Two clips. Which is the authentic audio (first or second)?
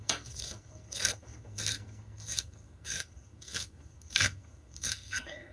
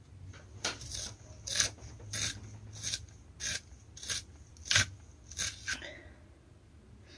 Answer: second